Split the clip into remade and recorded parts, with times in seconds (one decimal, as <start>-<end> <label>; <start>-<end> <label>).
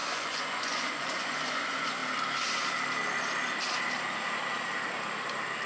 0.0-2.0 remade; 2.0-5.7 recorded